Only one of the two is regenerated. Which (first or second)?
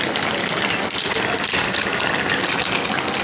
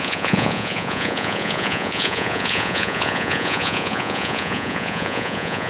second